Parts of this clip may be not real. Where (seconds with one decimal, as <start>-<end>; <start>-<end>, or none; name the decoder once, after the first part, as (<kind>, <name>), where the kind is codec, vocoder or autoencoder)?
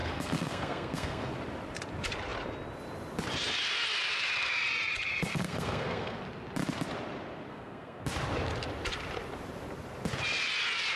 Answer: 0.0-1.3 (codec, SNAC); 5.3-6.2; 7.5-8.0